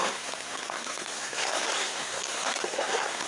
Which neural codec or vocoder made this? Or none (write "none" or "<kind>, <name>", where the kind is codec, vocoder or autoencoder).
codec, SNAC